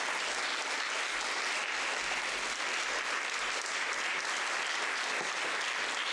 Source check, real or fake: real